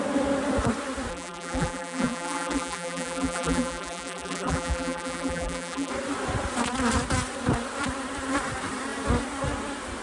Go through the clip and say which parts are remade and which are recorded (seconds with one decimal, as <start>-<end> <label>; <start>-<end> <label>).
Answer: 0.0-1.1 recorded; 1.1-5.9 remade; 5.9-10.0 recorded